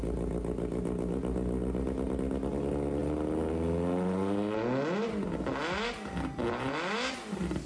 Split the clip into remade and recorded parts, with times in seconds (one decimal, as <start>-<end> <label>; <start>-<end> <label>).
0.0-7.7 recorded